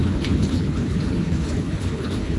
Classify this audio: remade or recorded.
remade